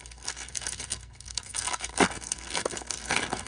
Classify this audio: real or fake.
fake